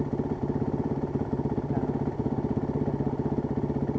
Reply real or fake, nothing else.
real